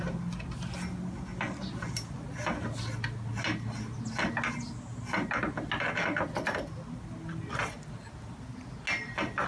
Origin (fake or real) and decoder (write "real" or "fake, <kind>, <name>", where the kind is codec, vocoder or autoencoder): real